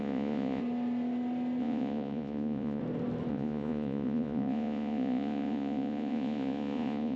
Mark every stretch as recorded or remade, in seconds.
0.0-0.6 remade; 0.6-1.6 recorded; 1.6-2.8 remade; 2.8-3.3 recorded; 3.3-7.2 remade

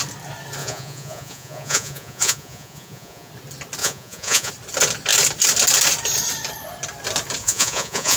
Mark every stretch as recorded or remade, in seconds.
0.0-0.6 recorded; 0.6-3.3 remade; 3.3-3.8 recorded; 3.8-4.5 remade; 4.5-7.4 recorded; 7.4-8.2 remade

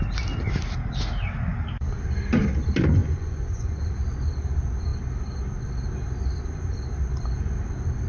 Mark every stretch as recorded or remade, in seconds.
0.0-3.0 recorded; 3.0-3.8 remade; 3.8-8.1 recorded

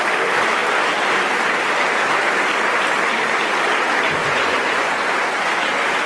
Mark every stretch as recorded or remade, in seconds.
0.0-4.2 recorded; 4.2-5.6 remade; 5.6-6.1 recorded

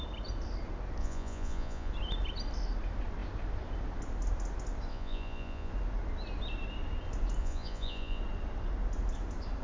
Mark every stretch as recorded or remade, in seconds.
0.0-1.0 recorded; 1.0-1.9 remade; 1.9-4.9 recorded; 4.9-5.7 remade; 5.7-7.4 recorded; 7.4-8.2 remade; 8.2-9.6 recorded

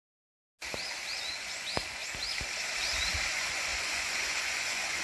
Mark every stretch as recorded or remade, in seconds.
0.0-1.3 recorded; 1.3-2.0 remade; 2.0-3.3 recorded; 3.3-5.0 remade